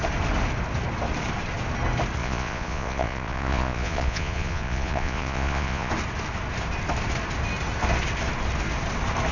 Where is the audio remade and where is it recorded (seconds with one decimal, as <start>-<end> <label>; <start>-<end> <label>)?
0.0-2.2 recorded; 2.2-5.9 remade; 5.9-9.3 recorded